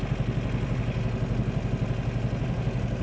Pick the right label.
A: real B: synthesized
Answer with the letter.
A